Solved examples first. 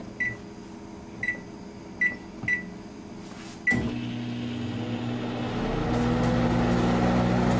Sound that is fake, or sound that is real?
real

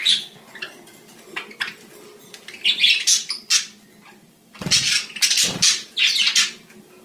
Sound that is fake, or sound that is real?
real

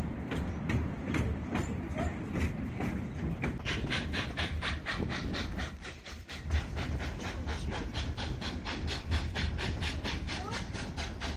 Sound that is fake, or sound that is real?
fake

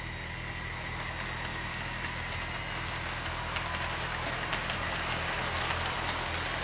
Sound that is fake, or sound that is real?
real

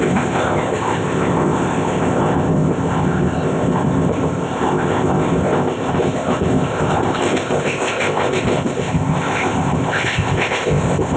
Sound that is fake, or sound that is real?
fake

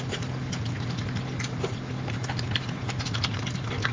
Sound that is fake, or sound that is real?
real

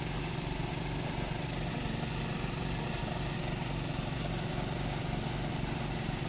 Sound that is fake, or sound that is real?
real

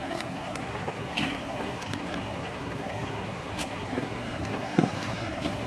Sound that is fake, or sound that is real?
fake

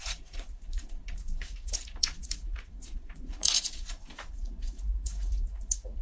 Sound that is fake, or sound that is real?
fake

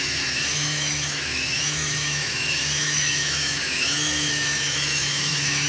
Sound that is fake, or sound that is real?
fake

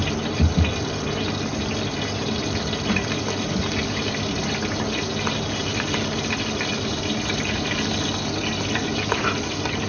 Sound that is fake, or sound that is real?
real